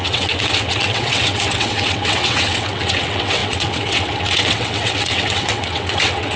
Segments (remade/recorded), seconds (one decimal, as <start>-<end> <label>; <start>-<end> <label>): 0.0-6.4 remade